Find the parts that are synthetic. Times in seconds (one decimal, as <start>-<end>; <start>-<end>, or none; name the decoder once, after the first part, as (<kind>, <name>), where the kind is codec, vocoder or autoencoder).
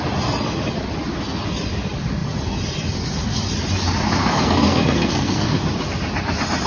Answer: 4.2-5.6 (codec, SNAC)